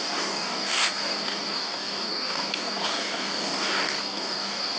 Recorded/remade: remade